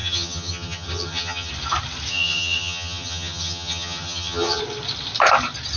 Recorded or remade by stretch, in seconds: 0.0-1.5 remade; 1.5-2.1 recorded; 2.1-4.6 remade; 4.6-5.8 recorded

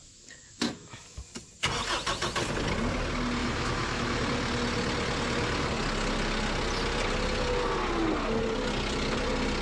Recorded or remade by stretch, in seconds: 0.0-1.2 remade; 1.2-3.4 recorded; 3.4-4.2 remade; 4.2-9.6 recorded

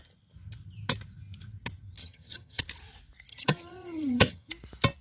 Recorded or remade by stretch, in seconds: 0.0-2.0 recorded; 2.0-2.6 remade; 2.6-3.3 recorded; 3.3-4.5 remade; 4.5-5.0 recorded

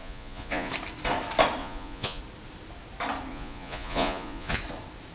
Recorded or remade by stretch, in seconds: 0.0-0.7 remade; 0.7-1.6 recorded; 1.6-2.2 remade; 2.2-3.3 recorded; 3.3-4.6 remade; 4.6-5.1 recorded